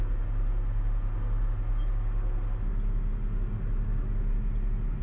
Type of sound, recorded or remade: recorded